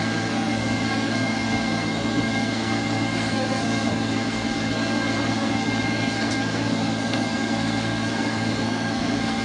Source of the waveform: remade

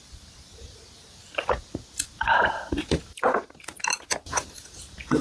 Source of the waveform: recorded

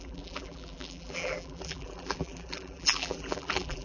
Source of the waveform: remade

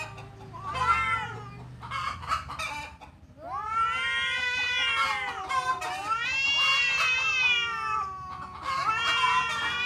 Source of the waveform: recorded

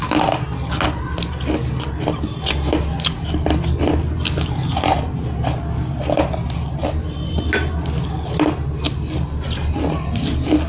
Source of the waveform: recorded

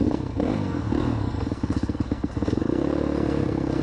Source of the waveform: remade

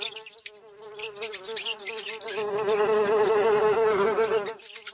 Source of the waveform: recorded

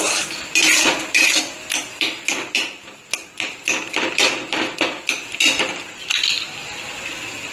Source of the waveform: recorded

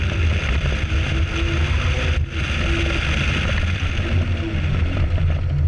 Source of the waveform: recorded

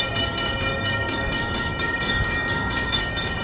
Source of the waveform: remade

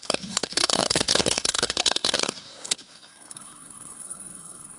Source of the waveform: remade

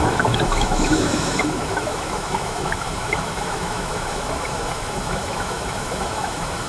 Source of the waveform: remade